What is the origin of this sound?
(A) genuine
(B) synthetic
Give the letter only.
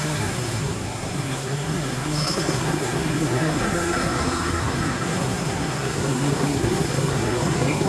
B